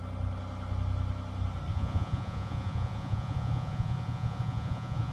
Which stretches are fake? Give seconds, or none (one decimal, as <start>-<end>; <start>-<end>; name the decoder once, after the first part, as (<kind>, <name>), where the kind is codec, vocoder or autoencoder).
1.7-5.1 (vocoder, Vocos)